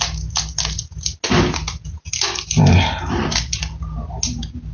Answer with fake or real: real